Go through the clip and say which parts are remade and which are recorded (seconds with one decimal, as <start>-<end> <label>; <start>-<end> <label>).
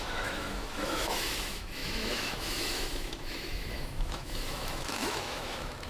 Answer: 0.0-5.9 remade